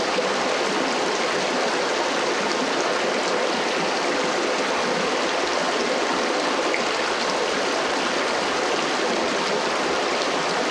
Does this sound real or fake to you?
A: real